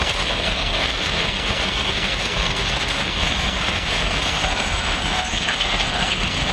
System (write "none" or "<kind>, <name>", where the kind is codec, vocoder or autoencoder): codec, SNAC